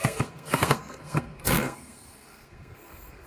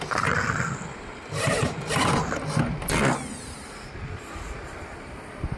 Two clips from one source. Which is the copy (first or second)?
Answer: first